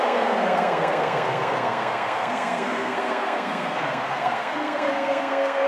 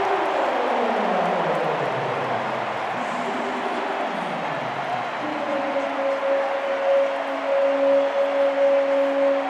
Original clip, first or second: second